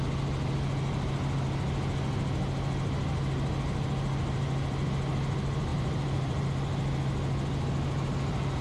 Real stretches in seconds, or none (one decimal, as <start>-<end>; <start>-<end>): 0.0-5.7; 6.5-8.6